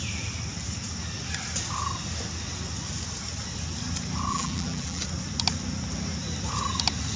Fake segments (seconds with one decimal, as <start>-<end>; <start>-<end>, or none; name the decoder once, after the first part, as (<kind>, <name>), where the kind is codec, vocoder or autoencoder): 4.3-5.0 (vocoder, BigVGAN v2)